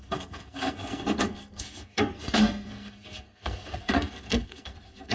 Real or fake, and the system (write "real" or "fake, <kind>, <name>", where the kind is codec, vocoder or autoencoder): fake, codec, SNAC